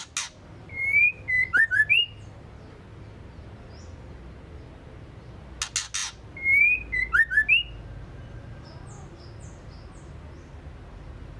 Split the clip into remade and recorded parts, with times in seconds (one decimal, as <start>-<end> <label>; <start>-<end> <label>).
0.0-11.4 recorded